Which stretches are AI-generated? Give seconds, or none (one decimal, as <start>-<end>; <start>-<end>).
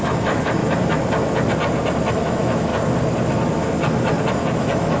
0.0-0.6; 2.1-2.7; 4.3-5.0